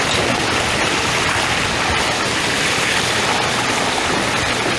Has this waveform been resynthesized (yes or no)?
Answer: no